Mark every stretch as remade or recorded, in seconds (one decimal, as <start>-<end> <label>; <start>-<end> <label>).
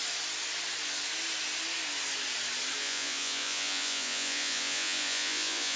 0.0-2.8 recorded; 2.8-5.8 remade